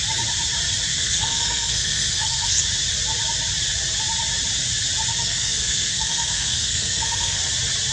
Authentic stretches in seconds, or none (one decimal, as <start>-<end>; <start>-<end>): 0.0-0.9; 2.6-5.1; 7.4-7.9

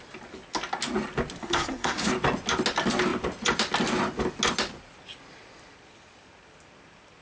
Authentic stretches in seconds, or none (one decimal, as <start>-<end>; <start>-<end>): 0.0-1.4; 2.1-7.2